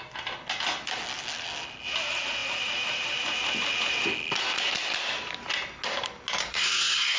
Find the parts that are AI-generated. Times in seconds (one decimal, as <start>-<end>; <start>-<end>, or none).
6.4-7.2